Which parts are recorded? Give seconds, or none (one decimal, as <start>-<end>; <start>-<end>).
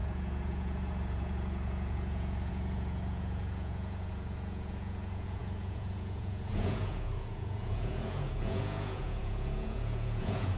none